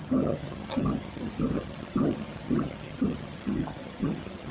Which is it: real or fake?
fake